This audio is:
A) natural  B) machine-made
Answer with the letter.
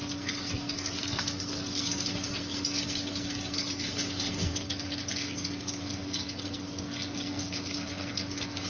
B